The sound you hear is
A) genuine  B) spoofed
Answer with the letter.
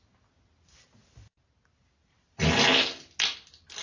A